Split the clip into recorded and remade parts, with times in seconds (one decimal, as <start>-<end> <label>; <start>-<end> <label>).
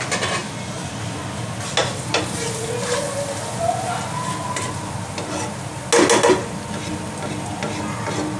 0.0-8.4 recorded